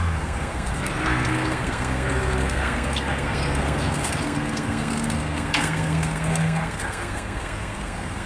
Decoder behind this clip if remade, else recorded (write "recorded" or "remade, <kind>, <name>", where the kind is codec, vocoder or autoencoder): remade, codec, SNAC